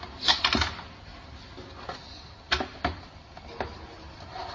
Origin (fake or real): real